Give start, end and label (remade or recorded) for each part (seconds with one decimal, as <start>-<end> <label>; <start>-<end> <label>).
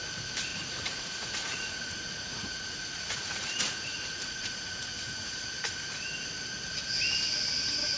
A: 0.0-0.5 recorded; 0.5-5.3 remade; 5.3-8.0 recorded